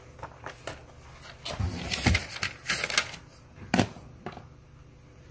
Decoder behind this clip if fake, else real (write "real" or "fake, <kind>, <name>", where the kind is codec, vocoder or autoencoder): real